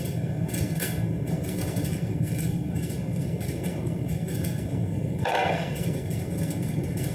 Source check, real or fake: fake